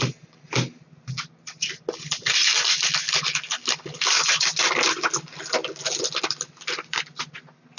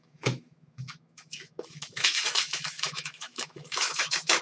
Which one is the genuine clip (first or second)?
first